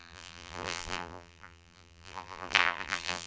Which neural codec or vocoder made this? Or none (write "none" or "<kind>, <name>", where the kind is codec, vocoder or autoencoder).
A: vocoder, BigVGAN v2